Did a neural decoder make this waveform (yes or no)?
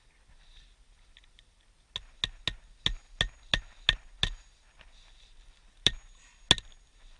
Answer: no